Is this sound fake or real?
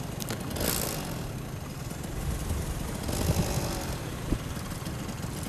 real